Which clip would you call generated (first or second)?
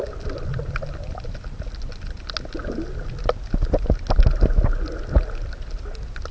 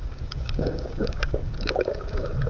second